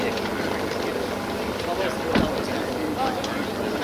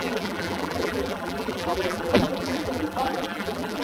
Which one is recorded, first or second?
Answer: first